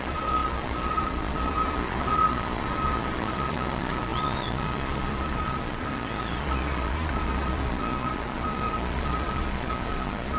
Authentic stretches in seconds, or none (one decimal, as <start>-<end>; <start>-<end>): none